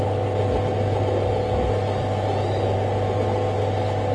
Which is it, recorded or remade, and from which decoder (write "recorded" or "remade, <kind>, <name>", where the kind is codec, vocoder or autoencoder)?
recorded